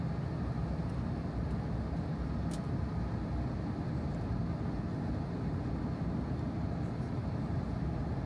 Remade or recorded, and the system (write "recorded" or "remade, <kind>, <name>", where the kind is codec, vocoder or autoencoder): recorded